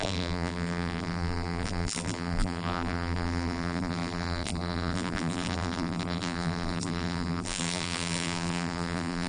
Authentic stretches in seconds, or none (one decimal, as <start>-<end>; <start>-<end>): none